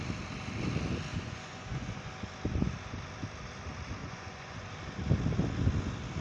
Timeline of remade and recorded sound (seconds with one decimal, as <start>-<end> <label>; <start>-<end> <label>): 0.0-1.1 recorded; 1.1-2.1 remade; 2.1-4.0 recorded; 4.0-4.7 remade; 4.7-6.2 recorded